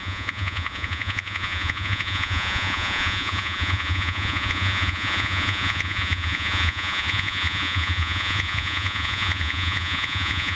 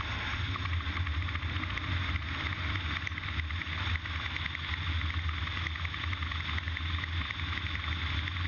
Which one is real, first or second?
second